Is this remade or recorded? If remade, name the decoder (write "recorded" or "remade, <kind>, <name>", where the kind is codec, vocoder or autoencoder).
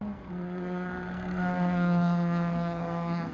remade, codec, SNAC